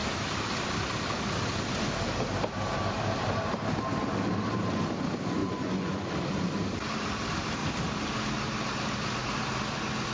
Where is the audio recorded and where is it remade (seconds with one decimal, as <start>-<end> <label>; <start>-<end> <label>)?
0.0-5.4 recorded; 5.4-6.1 remade; 6.1-10.1 recorded